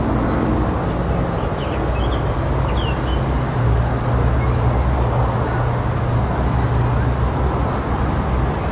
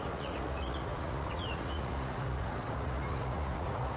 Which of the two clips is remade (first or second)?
second